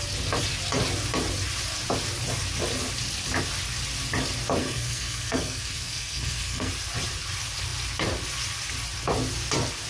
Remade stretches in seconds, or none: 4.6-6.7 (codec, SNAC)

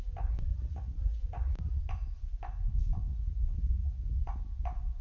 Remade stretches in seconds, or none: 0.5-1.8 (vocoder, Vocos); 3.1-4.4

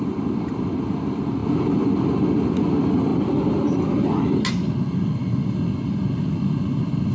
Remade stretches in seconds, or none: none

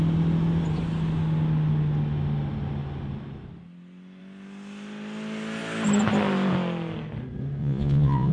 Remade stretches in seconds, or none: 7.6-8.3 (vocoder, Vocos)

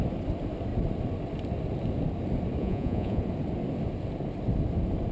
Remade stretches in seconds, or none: 2.6-3.2 (vocoder, Vocos)